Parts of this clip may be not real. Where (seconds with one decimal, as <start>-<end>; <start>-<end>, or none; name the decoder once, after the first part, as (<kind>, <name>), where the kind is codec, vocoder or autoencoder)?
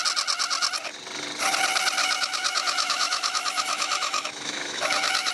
2.0-5.3 (autoencoder, DAC-VAE)